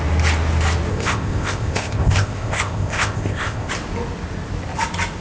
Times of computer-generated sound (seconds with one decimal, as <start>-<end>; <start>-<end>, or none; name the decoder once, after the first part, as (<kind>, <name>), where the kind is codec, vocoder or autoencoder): 0.9-3.7 (codec, ZipCodec)